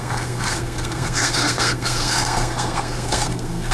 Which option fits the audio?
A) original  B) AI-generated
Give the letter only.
B